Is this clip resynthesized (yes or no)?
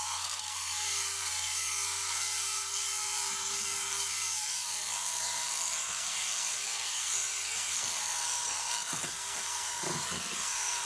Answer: yes